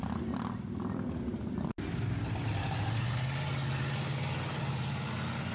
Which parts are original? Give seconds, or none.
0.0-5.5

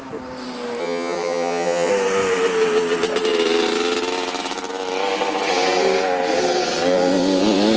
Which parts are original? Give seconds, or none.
0.0-0.8; 1.9-7.8

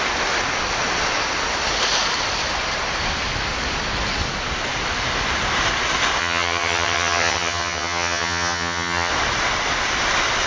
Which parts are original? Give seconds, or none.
0.0-6.2; 9.1-10.5

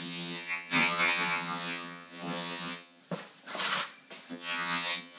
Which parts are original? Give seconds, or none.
3.0-4.3

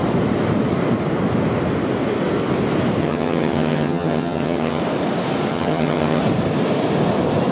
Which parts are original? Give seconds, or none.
0.0-3.0; 4.8-5.5; 6.2-7.5

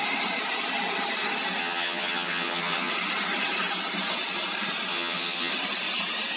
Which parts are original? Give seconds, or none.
0.0-1.6; 2.9-4.9; 5.5-6.4

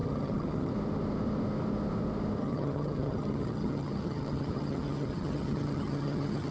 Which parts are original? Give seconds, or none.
0.7-2.4